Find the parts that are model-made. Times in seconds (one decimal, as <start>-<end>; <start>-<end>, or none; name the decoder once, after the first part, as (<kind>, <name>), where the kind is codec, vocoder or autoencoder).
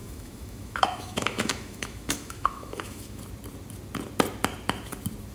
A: 0.0-3.2 (autoencoder, DAC-VAE)